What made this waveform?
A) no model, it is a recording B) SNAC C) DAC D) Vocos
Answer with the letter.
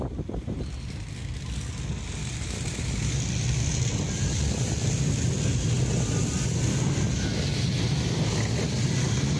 A